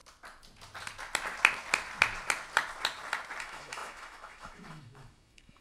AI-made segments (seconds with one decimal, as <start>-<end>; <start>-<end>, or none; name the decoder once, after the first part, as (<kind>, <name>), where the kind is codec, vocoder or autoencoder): 3.4-5.6 (autoencoder, DAC-VAE)